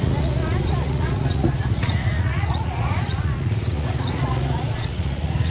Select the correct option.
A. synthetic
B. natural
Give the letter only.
A